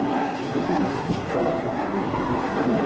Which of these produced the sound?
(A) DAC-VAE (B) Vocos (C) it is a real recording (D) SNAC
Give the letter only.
D